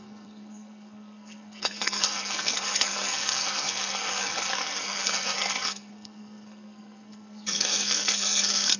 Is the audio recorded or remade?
remade